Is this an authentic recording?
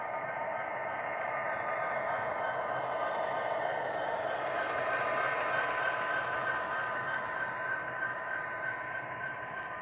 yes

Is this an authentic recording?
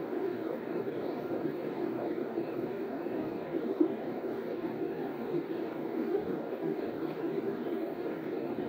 no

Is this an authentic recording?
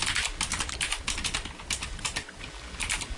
yes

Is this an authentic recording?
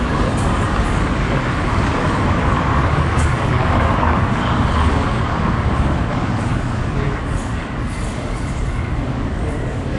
no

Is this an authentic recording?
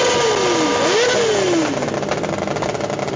yes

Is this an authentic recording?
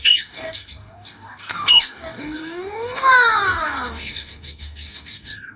no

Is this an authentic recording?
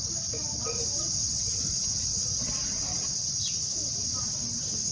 yes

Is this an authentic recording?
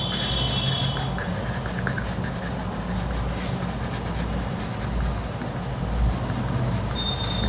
yes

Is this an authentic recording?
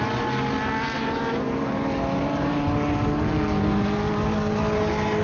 yes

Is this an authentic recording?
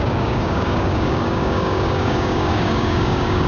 no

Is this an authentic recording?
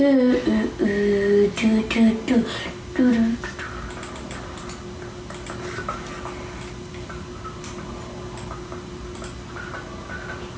yes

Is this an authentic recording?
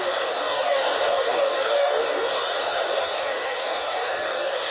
no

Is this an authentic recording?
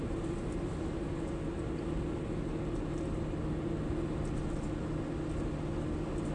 yes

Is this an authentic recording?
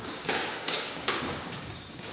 no